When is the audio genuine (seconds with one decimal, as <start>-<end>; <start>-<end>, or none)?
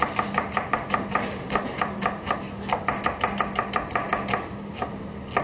0.0-5.4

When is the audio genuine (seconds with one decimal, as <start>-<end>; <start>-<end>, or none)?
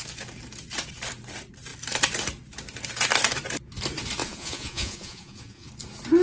0.0-4.2; 5.7-6.2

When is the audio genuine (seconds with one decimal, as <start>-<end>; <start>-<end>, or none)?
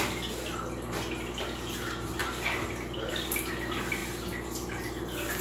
0.0-5.4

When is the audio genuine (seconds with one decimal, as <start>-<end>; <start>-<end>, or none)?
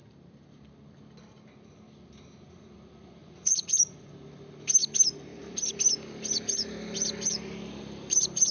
0.0-3.2; 4.1-8.5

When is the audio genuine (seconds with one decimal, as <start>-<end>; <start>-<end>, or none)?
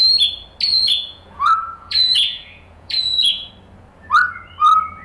0.0-0.7; 3.5-5.0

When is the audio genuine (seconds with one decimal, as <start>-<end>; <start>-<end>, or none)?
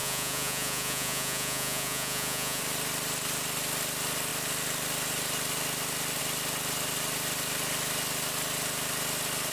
2.6-9.5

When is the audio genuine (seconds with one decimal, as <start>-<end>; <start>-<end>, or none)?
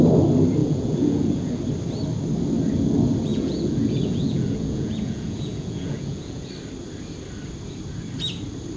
0.0-0.6; 1.6-3.3; 6.5-8.8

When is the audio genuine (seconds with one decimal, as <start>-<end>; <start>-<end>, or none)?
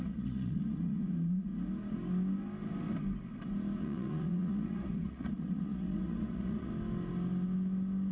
1.5-3.8; 6.7-8.1